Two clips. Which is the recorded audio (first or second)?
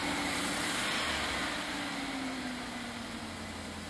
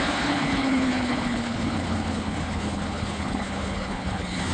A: first